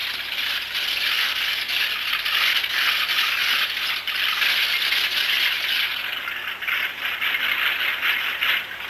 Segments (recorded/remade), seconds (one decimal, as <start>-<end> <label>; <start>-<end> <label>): 0.0-8.9 recorded